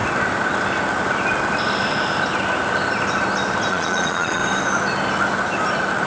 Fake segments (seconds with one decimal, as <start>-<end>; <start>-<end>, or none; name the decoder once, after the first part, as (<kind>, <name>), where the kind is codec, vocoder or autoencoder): 3.7-4.4 (vocoder, Vocos)